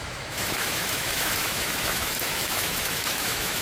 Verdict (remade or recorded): remade